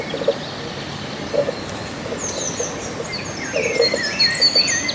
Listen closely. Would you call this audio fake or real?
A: real